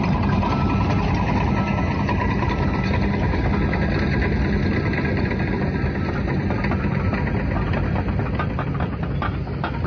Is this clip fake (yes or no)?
no